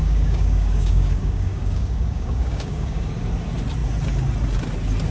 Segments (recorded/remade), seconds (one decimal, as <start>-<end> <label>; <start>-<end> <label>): 0.0-3.1 remade; 3.1-5.1 recorded